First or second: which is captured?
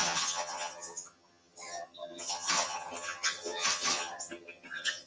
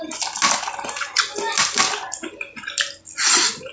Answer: second